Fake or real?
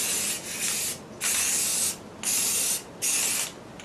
real